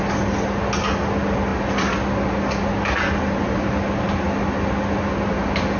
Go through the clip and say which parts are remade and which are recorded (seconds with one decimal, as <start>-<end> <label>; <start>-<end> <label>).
0.0-5.8 recorded